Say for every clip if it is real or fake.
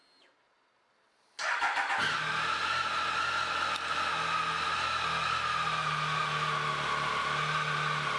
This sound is real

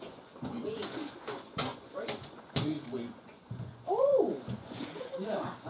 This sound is fake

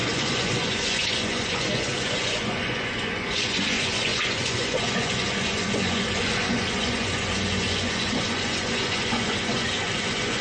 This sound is fake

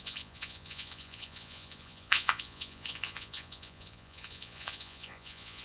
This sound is fake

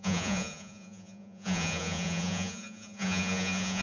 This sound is fake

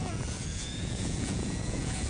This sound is fake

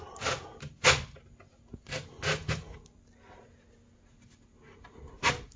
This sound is real